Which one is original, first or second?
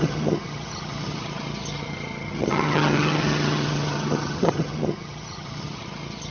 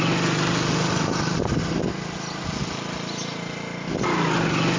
second